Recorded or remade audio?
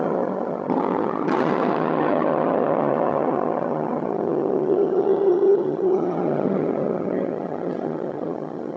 remade